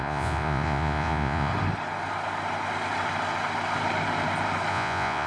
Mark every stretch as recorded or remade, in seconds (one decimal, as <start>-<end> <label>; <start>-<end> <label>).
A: 0.0-1.5 remade; 1.5-4.7 recorded; 4.7-5.3 remade